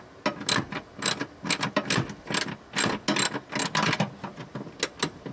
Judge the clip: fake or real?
real